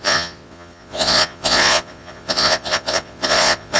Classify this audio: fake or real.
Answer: fake